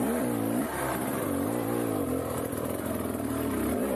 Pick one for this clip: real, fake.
real